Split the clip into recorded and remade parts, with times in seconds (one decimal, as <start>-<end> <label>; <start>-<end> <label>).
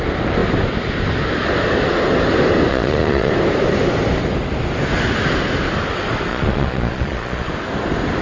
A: 0.0-2.7 recorded; 2.7-3.3 remade; 3.3-6.3 recorded; 6.3-7.5 remade; 7.5-8.2 recorded